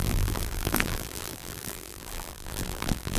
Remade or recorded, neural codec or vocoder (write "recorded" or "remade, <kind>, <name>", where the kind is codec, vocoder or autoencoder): remade, vocoder, BigVGAN v2